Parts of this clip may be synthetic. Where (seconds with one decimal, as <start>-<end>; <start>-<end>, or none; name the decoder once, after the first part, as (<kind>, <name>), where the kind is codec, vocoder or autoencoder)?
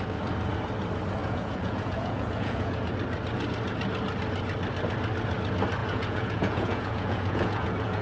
1.2-2.9 (vocoder, Vocos); 5.8-8.0